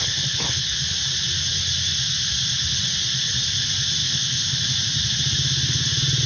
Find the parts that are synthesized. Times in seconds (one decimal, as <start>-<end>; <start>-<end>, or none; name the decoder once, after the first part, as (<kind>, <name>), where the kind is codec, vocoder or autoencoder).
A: 0.0-0.8 (codec, HILCodec); 4.0-4.6